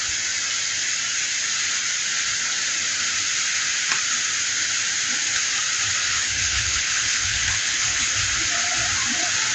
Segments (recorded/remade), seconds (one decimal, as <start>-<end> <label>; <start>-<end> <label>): 0.0-6.0 recorded; 6.0-8.1 remade; 8.1-9.5 recorded